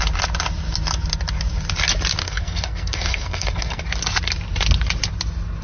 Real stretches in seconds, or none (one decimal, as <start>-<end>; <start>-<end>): 0.0-2.2; 3.8-5.6

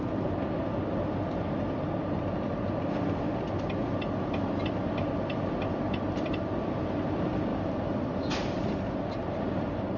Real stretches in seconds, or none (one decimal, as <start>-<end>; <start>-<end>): 0.0-7.5; 8.9-10.0

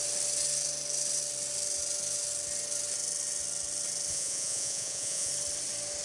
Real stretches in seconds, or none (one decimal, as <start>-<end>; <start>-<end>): 0.0-4.1; 5.3-6.0

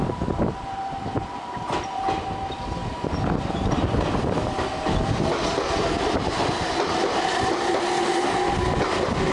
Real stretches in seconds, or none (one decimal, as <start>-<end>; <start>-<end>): 0.0-9.3

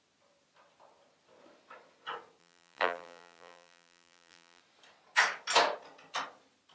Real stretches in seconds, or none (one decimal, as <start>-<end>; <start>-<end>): 0.0-2.4; 4.6-6.7